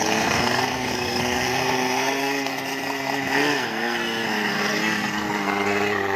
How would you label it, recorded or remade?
remade